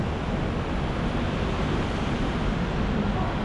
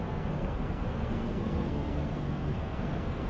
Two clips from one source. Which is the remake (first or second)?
second